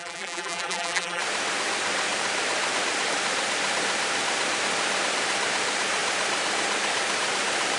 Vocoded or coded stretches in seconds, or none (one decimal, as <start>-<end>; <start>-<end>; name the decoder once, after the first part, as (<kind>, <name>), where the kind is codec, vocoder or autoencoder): 0.0-1.2 (vocoder, BigVGAN v2)